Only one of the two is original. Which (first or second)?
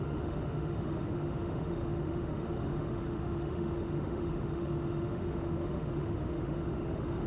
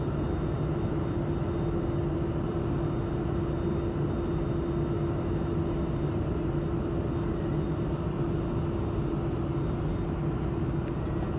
second